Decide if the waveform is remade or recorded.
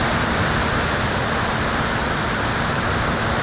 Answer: recorded